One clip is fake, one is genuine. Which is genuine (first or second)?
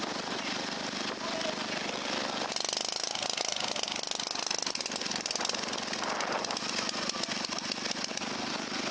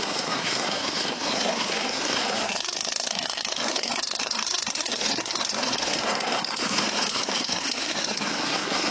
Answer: first